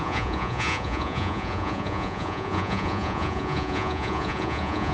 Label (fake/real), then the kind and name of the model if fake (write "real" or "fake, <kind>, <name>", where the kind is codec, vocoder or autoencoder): fake, vocoder, Vocos